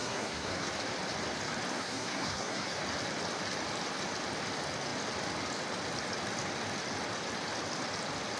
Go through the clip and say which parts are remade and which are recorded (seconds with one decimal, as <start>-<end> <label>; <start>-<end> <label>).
0.0-0.7 remade; 0.7-1.7 recorded; 1.7-2.8 remade; 2.8-8.4 recorded